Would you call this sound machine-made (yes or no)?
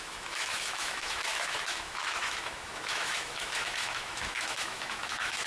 yes